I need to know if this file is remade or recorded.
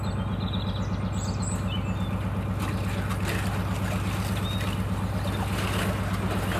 recorded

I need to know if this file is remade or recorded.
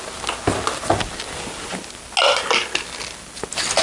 recorded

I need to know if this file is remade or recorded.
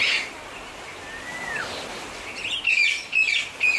recorded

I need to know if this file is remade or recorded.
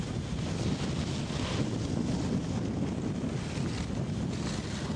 recorded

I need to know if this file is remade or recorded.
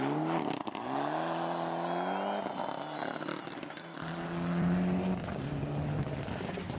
recorded